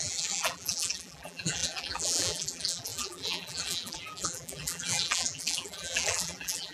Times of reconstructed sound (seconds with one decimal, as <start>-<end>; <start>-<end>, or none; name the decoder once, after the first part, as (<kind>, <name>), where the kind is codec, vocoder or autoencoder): 0.0-6.7 (vocoder, BigVGAN v2)